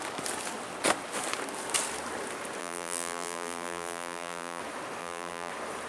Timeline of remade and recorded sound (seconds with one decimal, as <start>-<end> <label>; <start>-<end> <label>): 0.0-2.6 recorded; 2.6-4.6 remade; 4.6-5.0 recorded; 5.0-5.5 remade; 5.5-5.9 recorded